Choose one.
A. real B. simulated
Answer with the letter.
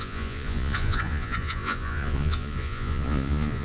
B